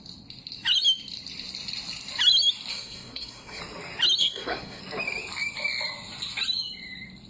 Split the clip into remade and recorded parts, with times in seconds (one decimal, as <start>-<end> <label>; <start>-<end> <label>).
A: 0.0-2.7 recorded; 2.7-3.6 remade; 3.6-4.2 recorded; 4.2-4.8 remade; 4.8-7.3 recorded